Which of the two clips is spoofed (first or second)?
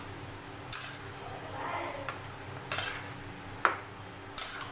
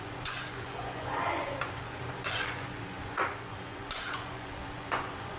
second